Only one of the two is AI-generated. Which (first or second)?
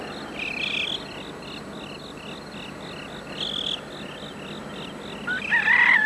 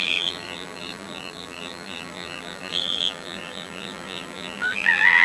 second